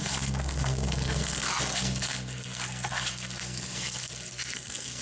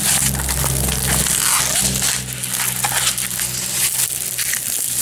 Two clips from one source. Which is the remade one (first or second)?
first